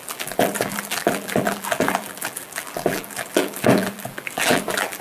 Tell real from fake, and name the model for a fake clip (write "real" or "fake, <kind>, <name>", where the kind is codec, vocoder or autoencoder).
fake, vocoder, BigVGAN v2